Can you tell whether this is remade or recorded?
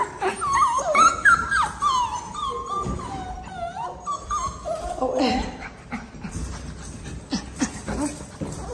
recorded